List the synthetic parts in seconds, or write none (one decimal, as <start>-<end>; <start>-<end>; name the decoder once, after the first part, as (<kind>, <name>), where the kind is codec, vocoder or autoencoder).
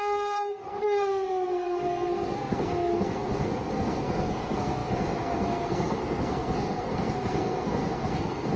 0.0-8.6 (codec, SNAC)